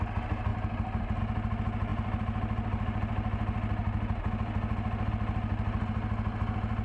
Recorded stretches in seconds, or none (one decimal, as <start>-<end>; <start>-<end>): 0.0-0.5; 1.2-6.8